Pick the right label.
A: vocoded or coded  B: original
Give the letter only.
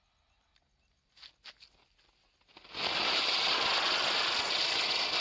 B